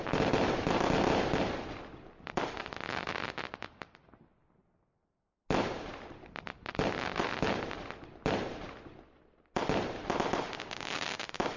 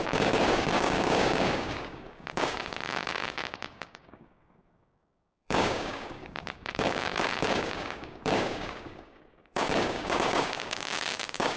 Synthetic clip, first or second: second